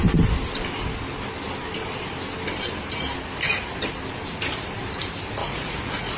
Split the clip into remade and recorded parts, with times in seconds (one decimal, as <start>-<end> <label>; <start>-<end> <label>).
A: 0.0-5.4 recorded; 5.4-6.2 remade

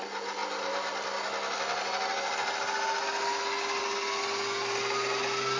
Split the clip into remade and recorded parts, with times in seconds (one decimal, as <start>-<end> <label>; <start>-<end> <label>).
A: 0.0-5.6 recorded

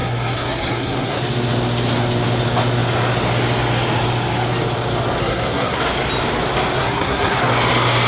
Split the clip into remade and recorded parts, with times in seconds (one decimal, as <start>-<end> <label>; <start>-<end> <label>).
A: 0.0-1.2 remade; 1.2-5.2 recorded; 5.2-5.8 remade; 5.8-6.8 recorded; 6.8-7.4 remade; 7.4-8.1 recorded

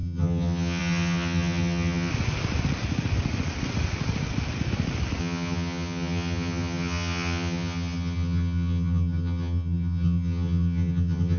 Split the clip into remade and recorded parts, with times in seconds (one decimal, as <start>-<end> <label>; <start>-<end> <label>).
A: 0.0-2.1 remade; 2.1-5.2 recorded; 5.2-11.4 remade

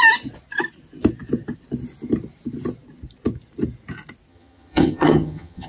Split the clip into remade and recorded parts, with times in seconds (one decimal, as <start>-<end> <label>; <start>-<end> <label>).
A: 0.0-4.3 recorded; 4.3-5.7 remade

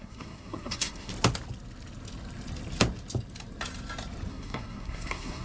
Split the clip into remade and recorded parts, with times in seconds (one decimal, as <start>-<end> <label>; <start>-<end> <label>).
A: 0.0-1.1 remade; 1.1-4.3 recorded; 4.3-5.4 remade

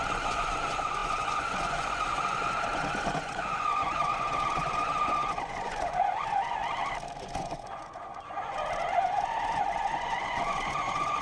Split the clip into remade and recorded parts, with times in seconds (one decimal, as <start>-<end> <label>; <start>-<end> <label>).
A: 0.0-6.6 remade; 6.6-7.2 recorded; 7.2-11.2 remade